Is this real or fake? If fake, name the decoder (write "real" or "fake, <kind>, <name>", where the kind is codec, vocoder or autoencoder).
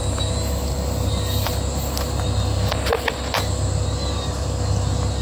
real